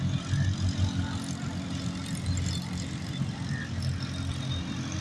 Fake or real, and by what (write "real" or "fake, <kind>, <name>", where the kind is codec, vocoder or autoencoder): real